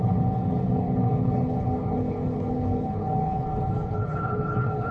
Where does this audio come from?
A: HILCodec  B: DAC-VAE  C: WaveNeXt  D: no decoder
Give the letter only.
A